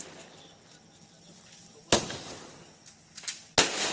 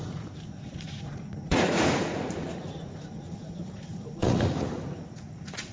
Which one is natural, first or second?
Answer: first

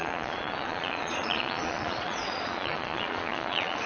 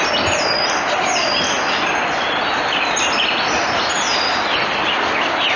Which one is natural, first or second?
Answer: second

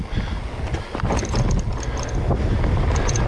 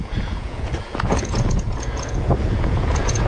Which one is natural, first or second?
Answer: first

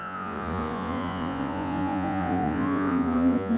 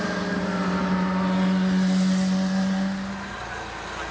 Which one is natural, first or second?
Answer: second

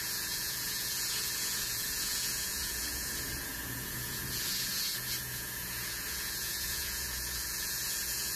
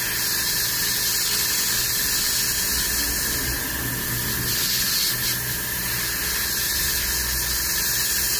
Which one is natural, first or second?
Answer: second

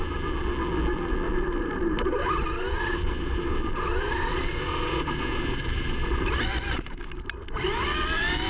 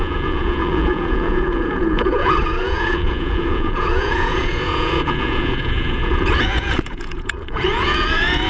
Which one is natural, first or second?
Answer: first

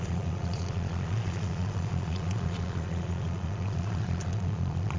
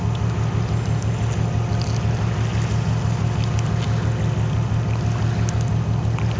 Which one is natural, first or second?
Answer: second